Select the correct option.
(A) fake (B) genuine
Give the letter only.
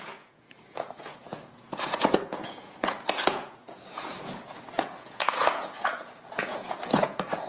A